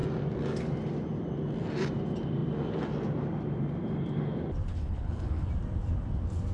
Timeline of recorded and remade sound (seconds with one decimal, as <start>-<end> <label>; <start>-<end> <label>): 0.0-4.7 recorded; 4.7-5.5 remade; 5.5-6.5 recorded